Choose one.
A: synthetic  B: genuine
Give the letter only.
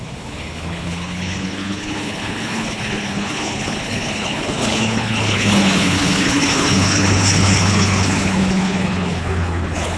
A